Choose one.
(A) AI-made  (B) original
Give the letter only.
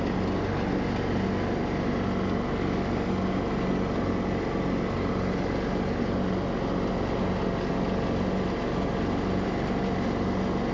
B